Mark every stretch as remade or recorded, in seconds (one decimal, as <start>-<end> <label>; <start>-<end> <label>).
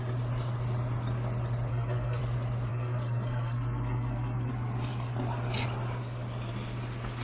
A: 0.0-1.7 recorded; 1.7-2.2 remade; 2.2-2.7 recorded; 2.7-4.5 remade; 4.5-7.2 recorded